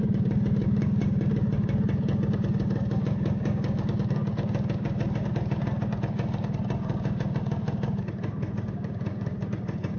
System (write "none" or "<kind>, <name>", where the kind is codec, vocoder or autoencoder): codec, DAC